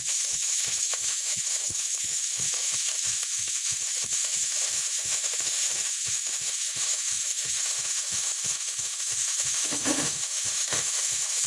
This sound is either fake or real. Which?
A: fake